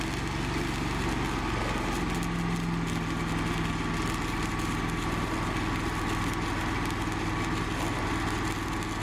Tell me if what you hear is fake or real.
real